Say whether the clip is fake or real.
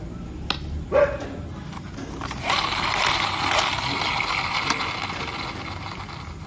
real